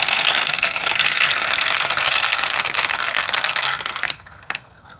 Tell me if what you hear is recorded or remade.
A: remade